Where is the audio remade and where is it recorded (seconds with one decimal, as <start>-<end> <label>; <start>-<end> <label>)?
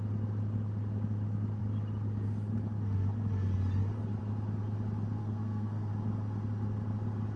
0.0-5.2 recorded; 5.2-5.9 remade; 5.9-7.4 recorded